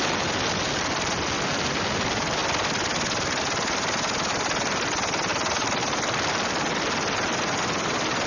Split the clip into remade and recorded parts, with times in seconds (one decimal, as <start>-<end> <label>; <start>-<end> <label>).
0.0-8.3 recorded